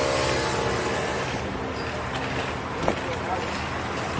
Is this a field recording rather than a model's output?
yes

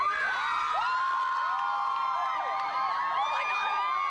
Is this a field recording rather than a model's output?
yes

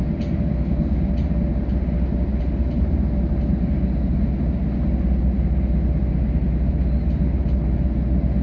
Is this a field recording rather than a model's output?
yes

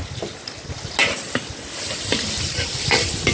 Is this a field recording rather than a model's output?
yes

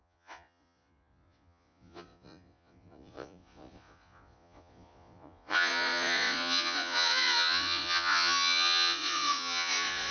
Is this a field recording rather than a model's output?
no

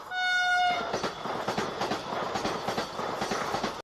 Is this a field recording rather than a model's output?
yes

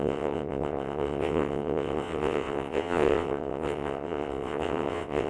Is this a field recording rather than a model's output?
no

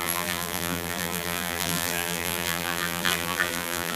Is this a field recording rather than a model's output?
no